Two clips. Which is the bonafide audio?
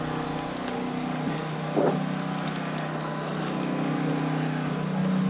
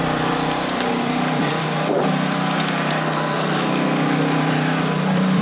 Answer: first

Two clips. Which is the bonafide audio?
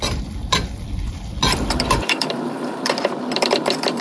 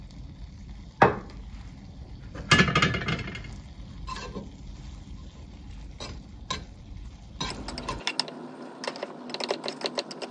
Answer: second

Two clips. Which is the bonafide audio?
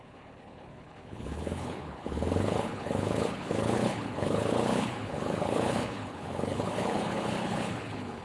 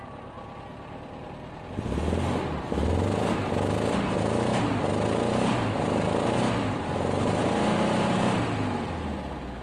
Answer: second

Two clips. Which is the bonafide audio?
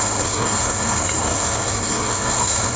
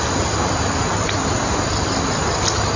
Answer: second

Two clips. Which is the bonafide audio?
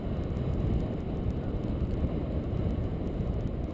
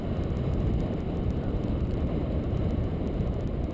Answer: first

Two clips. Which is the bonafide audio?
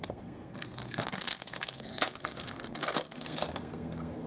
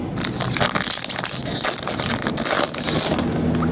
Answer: second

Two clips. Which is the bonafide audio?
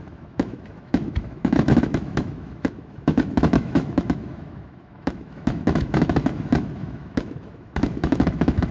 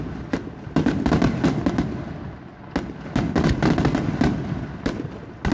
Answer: second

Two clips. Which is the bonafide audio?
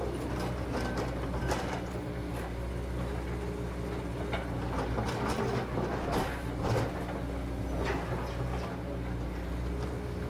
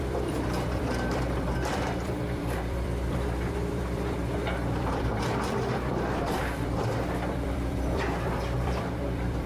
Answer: first